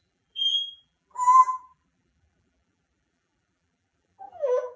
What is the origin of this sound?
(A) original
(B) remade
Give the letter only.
B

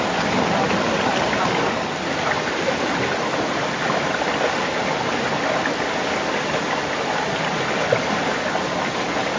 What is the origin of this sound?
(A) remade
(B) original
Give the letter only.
B